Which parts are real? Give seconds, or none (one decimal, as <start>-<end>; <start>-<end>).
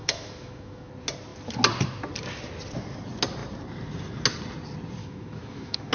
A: 0.9-5.0